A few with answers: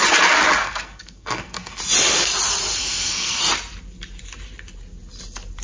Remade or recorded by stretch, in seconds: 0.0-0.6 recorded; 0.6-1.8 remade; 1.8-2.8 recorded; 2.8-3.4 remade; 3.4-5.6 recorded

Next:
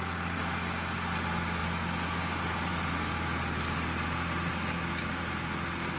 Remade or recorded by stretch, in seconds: 0.0-6.0 recorded

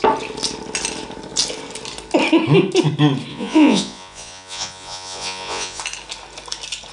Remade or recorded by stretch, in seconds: 0.0-3.3 recorded; 3.3-5.8 remade; 5.8-6.9 recorded

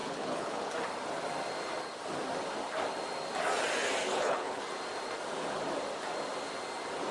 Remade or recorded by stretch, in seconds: 0.0-0.7 remade; 0.7-4.0 recorded; 4.0-4.6 remade; 4.6-7.1 recorded

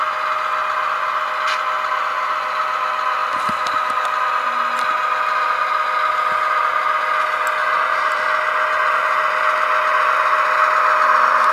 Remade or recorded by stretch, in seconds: 0.0-7.6 recorded; 7.6-8.2 remade; 8.2-11.5 recorded

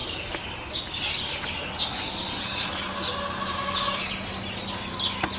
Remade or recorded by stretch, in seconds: 0.0-5.4 recorded

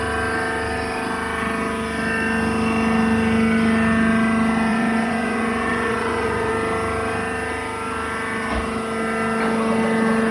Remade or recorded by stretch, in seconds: 0.0-4.7 recorded; 4.7-6.5 remade; 6.5-10.3 recorded

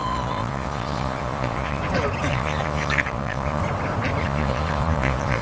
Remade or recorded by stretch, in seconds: 0.0-1.8 remade; 1.8-2.3 recorded; 2.3-3.6 remade; 3.6-4.2 recorded; 4.2-5.4 remade